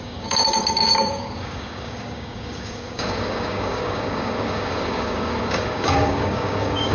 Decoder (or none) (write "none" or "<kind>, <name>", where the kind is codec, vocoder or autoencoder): codec, DAC